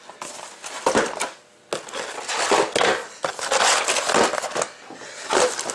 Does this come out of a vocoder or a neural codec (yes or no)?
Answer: no